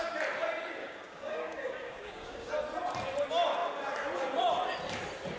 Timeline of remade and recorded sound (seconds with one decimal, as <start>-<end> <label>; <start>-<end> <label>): 0.0-0.8 recorded; 0.8-2.5 remade; 2.5-5.4 recorded